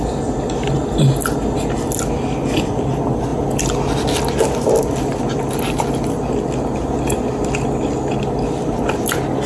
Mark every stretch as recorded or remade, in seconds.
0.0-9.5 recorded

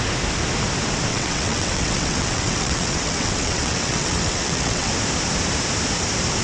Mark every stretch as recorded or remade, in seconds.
0.0-1.1 recorded; 1.1-4.9 remade; 4.9-6.4 recorded

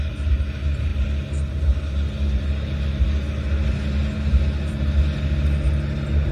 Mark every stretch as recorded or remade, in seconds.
0.0-6.3 recorded

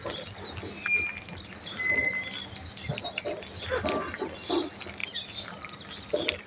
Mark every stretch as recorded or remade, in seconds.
0.0-6.5 recorded

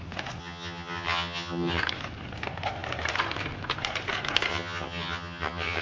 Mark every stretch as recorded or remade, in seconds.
0.0-0.4 recorded; 0.4-1.8 remade; 1.8-4.5 recorded; 4.5-5.8 remade

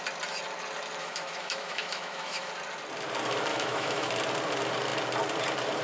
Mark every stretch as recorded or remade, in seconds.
0.0-1.0 recorded; 1.0-2.5 remade; 2.5-3.5 recorded; 3.5-4.1 remade; 4.1-5.8 recorded